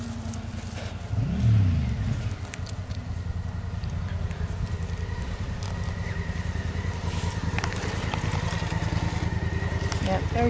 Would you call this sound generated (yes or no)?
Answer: no